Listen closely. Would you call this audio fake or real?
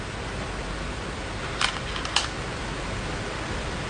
real